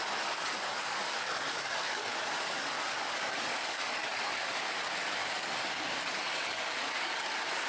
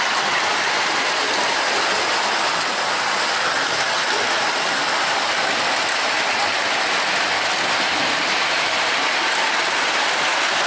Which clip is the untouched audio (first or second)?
second